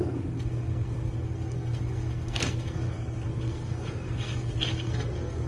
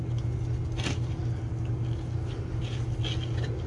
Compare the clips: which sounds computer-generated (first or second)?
first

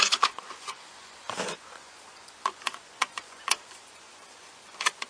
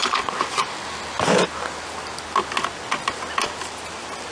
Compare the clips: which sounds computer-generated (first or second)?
first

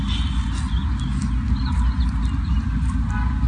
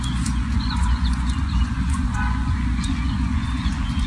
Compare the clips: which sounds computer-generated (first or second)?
second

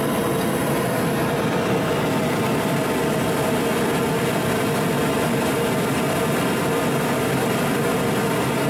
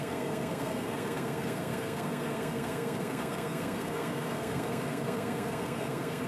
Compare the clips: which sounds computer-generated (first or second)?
second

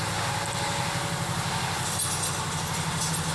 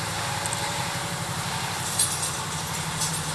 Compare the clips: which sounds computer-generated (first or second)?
second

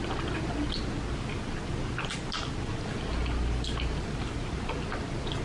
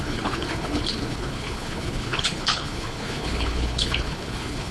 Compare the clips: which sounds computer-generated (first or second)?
second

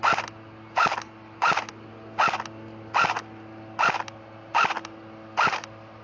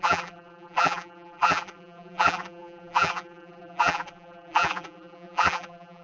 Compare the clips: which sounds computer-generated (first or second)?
second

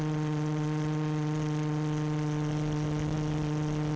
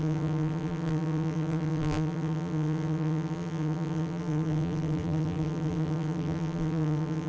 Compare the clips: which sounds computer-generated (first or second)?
second